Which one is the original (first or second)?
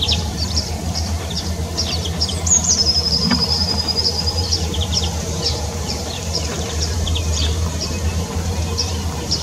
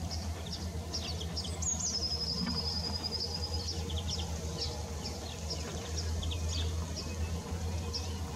second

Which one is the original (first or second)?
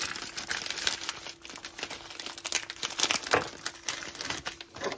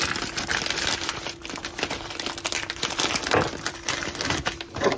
first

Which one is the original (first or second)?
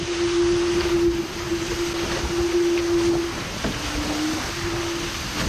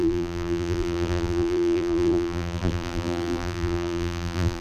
first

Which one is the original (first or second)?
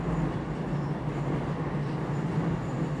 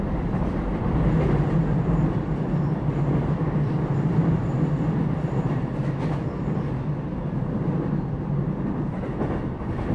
first